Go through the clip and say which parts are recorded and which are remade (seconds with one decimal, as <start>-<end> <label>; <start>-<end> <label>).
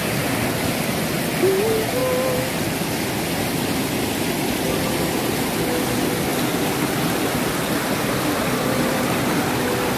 0.0-10.0 recorded